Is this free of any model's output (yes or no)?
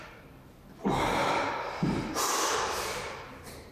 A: no